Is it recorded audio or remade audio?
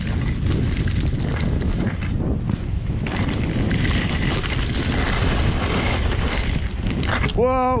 recorded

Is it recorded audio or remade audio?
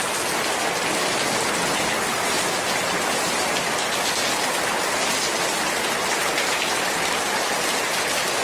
recorded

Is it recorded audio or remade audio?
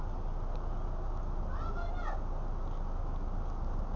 recorded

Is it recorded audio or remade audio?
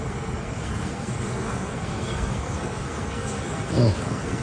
remade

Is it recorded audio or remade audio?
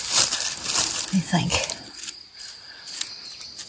recorded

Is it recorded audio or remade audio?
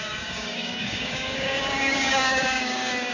remade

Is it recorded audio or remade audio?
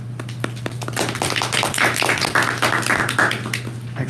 recorded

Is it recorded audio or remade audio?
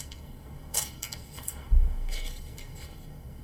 remade